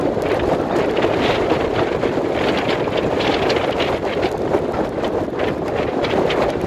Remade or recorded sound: recorded